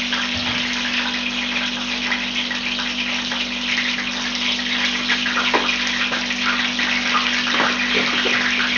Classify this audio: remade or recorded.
recorded